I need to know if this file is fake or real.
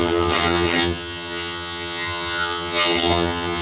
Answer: fake